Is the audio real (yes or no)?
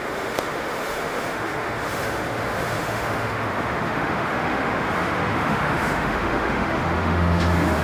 no